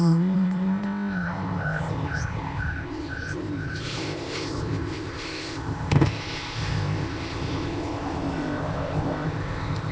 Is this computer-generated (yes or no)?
yes